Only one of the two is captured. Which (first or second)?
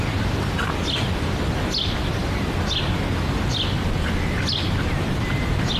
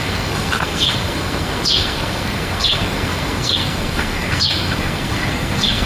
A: first